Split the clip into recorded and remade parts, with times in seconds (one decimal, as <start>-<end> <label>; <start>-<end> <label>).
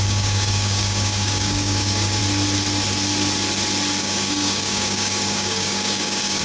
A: 0.0-2.2 remade; 2.2-4.0 recorded; 4.0-6.4 remade